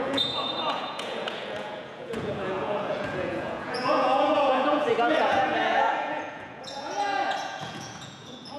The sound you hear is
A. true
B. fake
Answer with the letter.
B